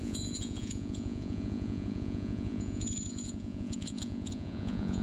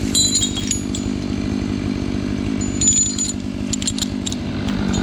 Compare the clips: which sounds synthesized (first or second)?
first